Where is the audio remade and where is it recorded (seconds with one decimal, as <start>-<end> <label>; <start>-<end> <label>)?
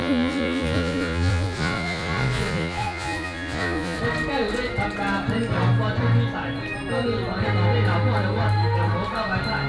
0.0-4.0 remade; 4.0-9.7 recorded